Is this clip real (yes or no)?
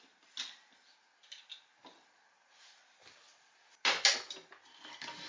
yes